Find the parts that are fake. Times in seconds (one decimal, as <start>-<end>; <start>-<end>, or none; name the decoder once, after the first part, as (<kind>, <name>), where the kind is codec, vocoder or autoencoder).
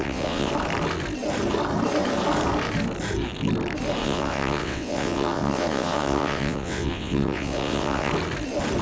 0.0-0.5 (vocoder, WaveNeXt); 4.0-8.1